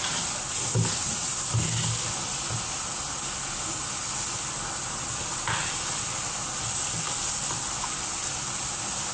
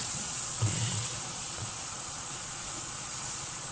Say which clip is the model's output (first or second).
second